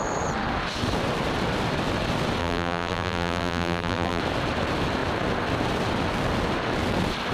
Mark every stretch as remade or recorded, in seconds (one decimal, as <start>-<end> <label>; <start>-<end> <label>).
0.0-2.4 recorded; 2.4-4.2 remade; 4.2-7.3 recorded